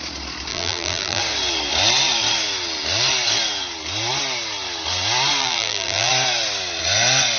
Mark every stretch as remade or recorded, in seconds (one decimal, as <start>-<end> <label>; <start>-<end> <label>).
0.0-0.5 recorded; 0.5-1.2 remade; 1.2-5.4 recorded; 5.4-6.1 remade; 6.1-7.4 recorded